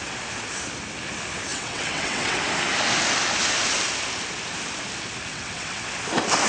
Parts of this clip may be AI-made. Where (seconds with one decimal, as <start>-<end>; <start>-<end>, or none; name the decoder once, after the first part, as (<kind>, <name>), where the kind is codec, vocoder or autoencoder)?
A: 1.5-2.4 (vocoder, WaveNeXt); 5.3-5.9